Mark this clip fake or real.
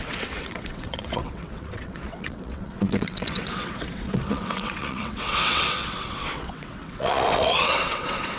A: fake